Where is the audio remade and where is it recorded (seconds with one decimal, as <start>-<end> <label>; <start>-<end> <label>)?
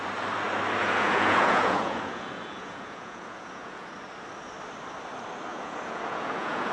0.0-0.8 recorded; 0.8-3.9 remade; 3.9-5.5 recorded; 5.5-6.7 remade